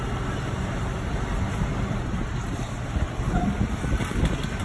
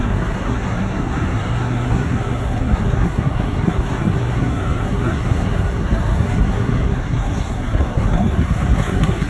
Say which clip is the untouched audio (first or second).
first